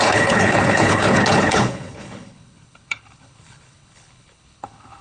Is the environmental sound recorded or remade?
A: remade